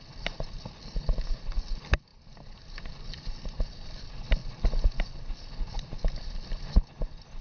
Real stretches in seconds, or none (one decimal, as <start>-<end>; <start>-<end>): 0.0-7.4